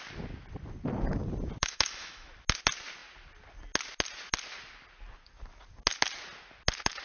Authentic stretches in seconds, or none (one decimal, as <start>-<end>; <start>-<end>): 0.0-1.6; 2.3-7.0